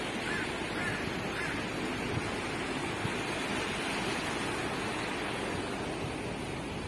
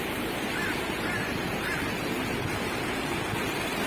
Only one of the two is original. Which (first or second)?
first